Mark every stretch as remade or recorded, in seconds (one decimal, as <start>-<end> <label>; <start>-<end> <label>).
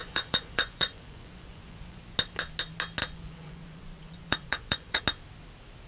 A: 0.0-2.0 remade; 2.0-3.0 recorded; 3.0-5.0 remade; 5.0-5.9 recorded